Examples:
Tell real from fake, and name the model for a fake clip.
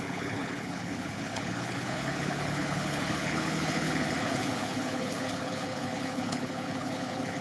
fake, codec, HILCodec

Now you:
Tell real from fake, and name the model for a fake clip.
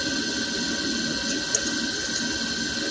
real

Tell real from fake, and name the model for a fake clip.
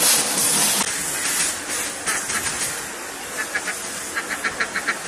real